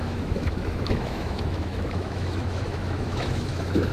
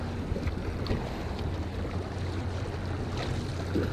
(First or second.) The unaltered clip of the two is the second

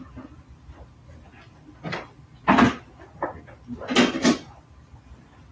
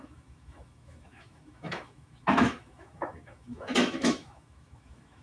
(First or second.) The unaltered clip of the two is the first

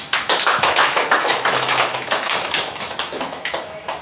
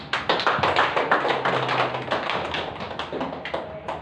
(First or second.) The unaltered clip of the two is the second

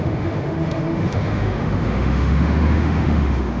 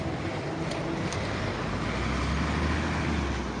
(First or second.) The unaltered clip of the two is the second